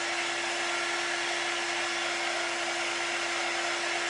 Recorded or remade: recorded